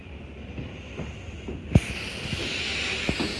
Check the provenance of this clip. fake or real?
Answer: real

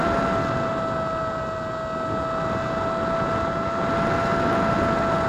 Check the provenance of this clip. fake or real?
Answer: real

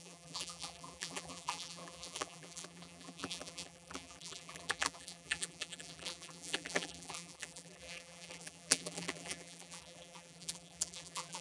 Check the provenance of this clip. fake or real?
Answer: fake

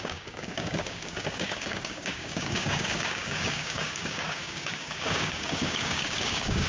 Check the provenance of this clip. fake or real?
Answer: fake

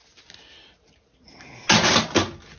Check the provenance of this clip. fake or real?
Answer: real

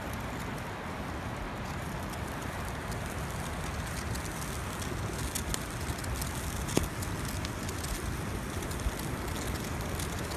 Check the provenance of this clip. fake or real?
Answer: real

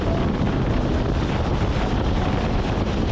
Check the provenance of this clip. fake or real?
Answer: fake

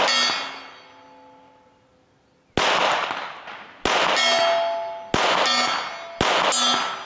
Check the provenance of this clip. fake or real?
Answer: real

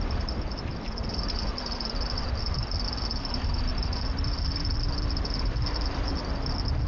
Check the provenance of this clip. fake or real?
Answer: real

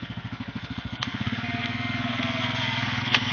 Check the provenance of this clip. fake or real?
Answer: fake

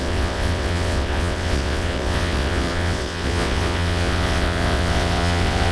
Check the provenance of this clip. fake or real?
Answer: fake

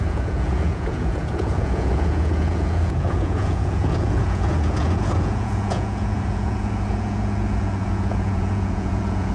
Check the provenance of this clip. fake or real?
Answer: fake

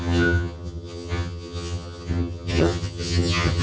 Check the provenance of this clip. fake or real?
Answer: fake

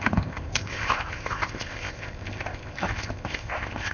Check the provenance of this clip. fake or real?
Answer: fake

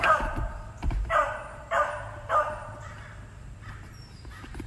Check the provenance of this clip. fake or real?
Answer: fake